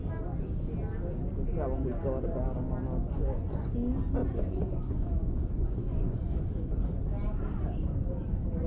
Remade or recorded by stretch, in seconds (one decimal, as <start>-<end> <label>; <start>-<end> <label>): 0.0-3.0 recorded; 3.0-3.7 remade; 3.7-4.2 recorded; 4.2-7.0 remade; 7.0-8.7 recorded